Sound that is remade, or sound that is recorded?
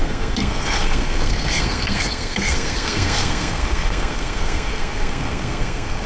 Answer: remade